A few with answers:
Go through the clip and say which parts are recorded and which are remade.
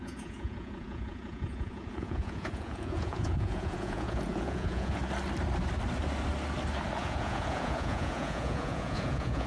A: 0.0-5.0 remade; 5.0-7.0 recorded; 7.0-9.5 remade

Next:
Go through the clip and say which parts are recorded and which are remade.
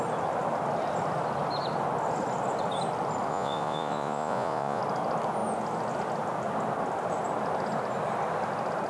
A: 0.0-3.3 recorded; 3.3-4.8 remade; 4.8-8.9 recorded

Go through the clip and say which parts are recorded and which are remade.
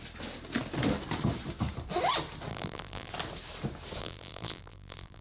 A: 0.0-2.5 recorded; 2.5-3.1 remade; 3.1-4.0 recorded; 4.0-5.2 remade